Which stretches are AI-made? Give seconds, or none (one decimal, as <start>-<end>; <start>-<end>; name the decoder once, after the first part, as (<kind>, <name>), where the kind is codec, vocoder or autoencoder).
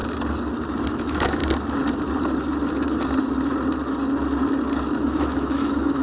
0.9-1.4 (autoencoder, DAC-VAE); 5.0-6.0